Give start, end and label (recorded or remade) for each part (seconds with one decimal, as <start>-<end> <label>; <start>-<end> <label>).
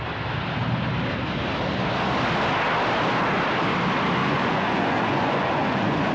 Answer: 0.0-4.2 recorded; 4.2-6.1 remade